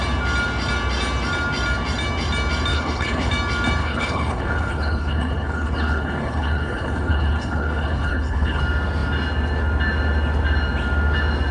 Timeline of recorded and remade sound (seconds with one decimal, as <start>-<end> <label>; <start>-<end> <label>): 0.0-2.7 recorded; 2.7-3.3 remade; 3.3-3.8 recorded; 3.8-8.6 remade; 8.6-11.5 recorded